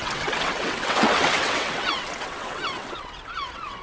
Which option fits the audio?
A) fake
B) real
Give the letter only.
A